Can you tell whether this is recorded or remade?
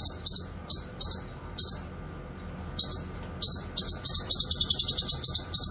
recorded